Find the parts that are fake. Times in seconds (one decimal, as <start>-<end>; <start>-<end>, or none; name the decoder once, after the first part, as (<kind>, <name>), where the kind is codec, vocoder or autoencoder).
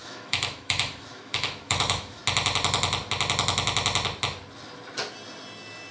0.0-2.2 (autoencoder, DAC-VAE)